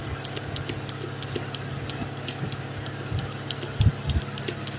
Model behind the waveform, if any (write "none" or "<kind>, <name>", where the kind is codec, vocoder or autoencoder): none